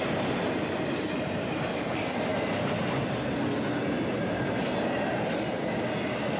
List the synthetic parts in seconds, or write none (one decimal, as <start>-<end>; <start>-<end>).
none